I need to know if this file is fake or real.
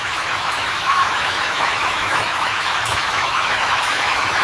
fake